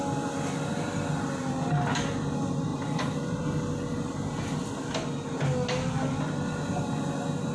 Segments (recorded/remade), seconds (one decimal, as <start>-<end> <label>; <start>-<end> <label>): 0.0-2.7 recorded; 2.7-3.4 remade; 3.4-7.5 recorded